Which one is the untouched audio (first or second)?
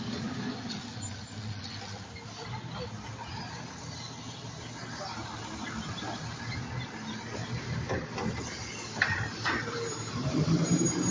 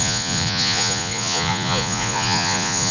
first